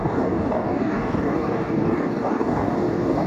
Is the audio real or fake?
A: fake